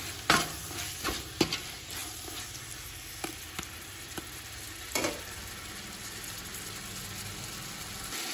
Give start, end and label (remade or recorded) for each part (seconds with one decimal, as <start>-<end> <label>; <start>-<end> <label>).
0.0-8.3 recorded